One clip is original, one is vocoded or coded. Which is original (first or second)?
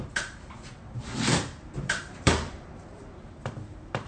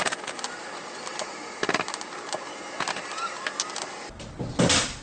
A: second